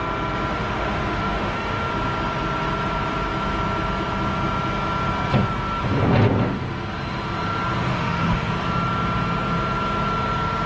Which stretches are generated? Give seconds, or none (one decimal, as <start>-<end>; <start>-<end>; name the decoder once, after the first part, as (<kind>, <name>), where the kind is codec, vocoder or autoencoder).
0.5-1.9 (autoencoder, DAC-VAE); 7.9-8.5